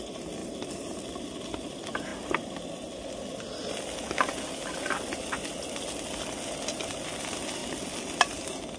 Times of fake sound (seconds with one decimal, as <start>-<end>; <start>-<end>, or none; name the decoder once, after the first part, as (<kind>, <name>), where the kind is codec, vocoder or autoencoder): 0.4-1.5 (vocoder, BigVGAN v2); 4.6-6.2